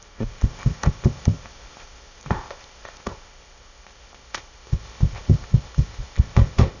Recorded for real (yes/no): no